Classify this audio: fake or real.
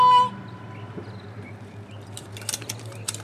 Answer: real